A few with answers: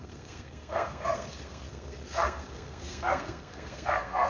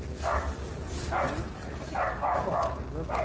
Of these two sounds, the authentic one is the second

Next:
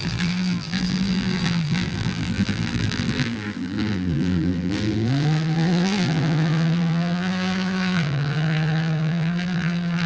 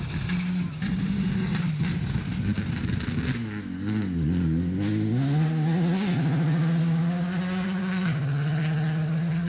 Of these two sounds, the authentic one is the second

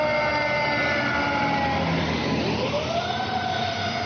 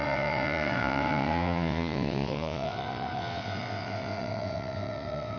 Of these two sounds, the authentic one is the first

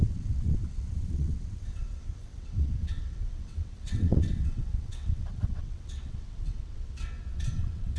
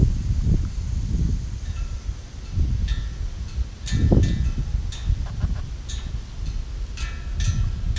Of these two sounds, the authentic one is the second